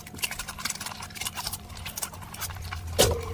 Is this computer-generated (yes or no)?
no